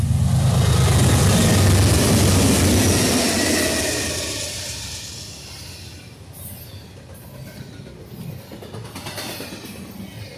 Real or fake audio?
real